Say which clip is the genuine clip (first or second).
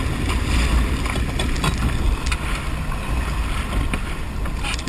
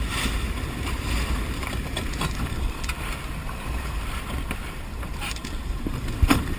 first